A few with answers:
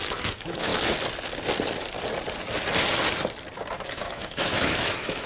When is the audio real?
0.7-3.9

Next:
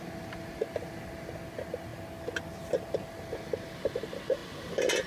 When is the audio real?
0.0-5.1